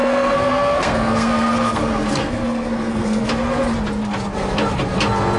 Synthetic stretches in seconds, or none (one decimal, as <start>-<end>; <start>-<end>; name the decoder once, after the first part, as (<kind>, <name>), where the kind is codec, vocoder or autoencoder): 0.0-3.2 (codec, SNAC)